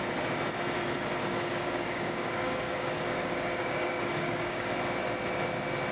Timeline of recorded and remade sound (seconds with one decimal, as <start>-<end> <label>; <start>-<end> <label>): 0.0-1.2 recorded; 1.2-4.7 remade; 4.7-5.9 recorded